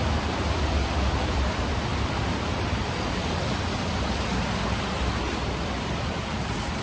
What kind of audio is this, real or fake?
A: fake